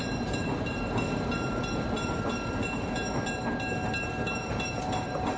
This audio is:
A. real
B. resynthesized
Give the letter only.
B